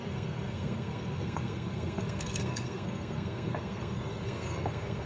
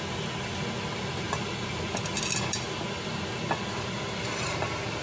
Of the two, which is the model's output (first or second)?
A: first